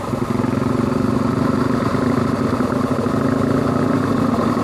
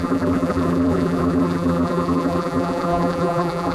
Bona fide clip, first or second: first